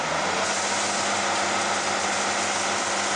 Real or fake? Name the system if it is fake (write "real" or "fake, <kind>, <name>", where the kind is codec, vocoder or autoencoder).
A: real